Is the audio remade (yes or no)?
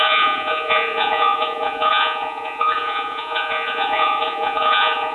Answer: yes